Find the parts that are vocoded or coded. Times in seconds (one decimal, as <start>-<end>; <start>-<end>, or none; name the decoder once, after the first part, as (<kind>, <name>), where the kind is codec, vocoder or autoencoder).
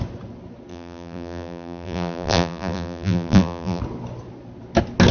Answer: 0.7-3.8 (vocoder, BigVGAN v2)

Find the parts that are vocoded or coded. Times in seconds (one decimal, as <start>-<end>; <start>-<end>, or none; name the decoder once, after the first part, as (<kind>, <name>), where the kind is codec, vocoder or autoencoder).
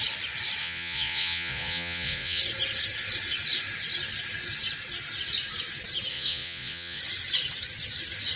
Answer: 0.6-2.4 (vocoder, Vocos); 6.1-7.0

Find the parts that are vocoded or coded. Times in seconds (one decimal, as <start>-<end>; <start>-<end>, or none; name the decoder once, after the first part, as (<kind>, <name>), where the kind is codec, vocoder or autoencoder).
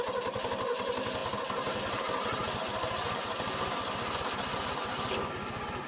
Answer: none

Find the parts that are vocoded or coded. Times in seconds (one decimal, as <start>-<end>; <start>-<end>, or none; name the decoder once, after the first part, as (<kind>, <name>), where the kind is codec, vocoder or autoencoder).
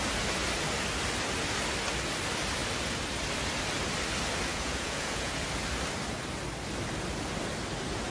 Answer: 4.5-5.4 (vocoder, Vocos)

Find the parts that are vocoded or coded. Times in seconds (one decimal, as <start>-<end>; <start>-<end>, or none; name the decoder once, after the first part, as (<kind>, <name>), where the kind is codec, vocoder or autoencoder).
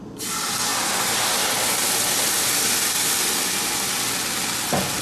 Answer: none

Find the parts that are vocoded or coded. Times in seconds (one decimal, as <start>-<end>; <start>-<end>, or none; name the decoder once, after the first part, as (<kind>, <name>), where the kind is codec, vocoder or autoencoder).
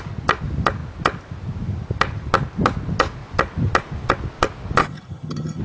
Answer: 4.8-5.6 (vocoder, HiFi-GAN)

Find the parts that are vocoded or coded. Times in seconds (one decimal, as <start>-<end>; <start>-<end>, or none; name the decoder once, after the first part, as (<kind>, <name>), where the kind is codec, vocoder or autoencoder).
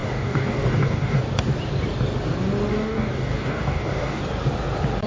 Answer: 0.0-1.2 (codec, DAC); 2.7-4.2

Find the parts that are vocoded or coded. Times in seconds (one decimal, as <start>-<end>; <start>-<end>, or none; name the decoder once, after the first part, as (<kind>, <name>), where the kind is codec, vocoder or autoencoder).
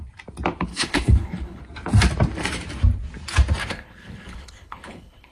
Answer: 0.7-1.6 (codec, HILCodec); 3.6-5.3